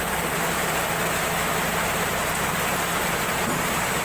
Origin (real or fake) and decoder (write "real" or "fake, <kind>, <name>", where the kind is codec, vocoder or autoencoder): real